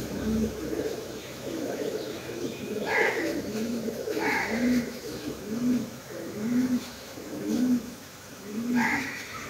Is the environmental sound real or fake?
fake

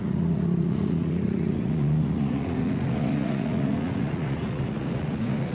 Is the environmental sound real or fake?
fake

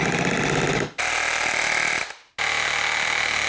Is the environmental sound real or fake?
real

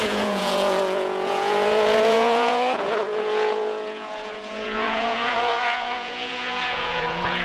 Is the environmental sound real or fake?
fake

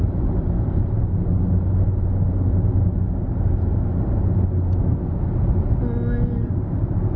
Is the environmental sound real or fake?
real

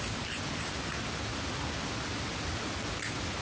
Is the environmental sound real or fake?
real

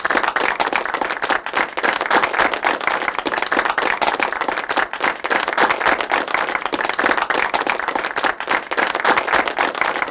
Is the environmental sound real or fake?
real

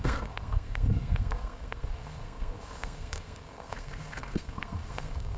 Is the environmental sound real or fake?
fake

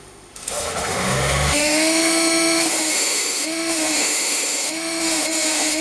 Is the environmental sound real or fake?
fake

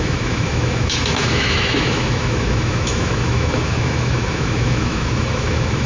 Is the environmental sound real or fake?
fake